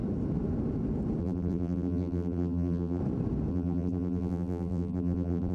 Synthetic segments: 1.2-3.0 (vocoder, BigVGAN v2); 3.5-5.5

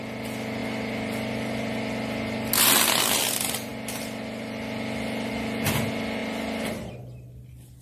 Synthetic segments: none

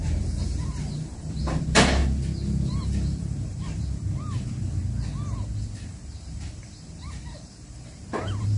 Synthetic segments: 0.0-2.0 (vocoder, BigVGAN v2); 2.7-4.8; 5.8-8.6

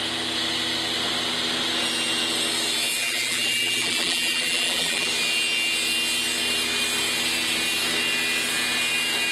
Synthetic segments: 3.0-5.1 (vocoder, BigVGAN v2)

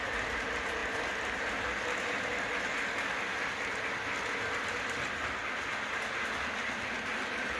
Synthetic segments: 0.0-0.8 (vocoder, BigVGAN v2); 5.4-7.6

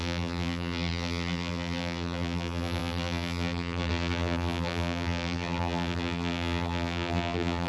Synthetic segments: 0.0-7.7 (vocoder, BigVGAN v2)